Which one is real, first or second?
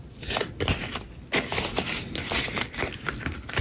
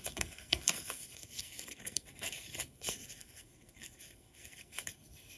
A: first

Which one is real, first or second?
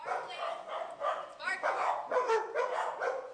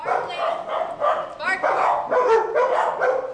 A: second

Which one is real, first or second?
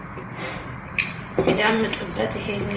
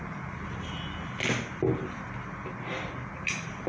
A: second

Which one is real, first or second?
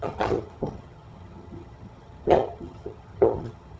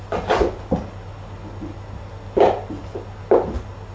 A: second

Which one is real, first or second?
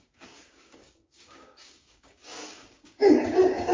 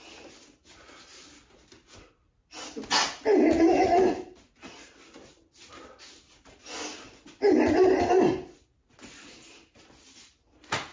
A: second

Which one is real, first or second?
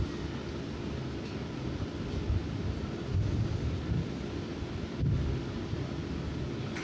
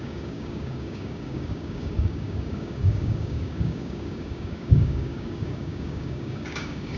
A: first